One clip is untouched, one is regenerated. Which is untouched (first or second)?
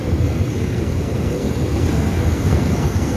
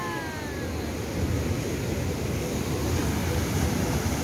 second